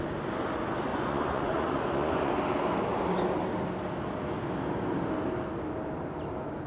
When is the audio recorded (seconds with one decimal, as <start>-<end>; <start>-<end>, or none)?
0.0-0.9; 2.3-6.7